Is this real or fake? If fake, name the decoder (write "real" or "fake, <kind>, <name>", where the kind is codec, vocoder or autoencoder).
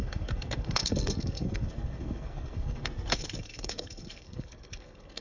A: fake, codec, SNAC